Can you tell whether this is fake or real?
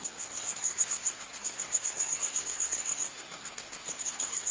fake